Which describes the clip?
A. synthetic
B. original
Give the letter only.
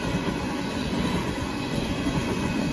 A